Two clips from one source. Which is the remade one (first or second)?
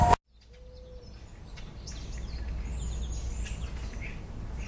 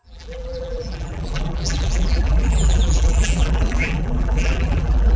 second